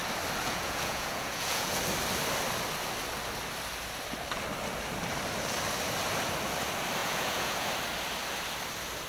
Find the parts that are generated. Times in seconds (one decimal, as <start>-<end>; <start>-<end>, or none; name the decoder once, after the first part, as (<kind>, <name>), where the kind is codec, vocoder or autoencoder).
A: 0.4-1.8 (vocoder, Vocos); 7.0-7.7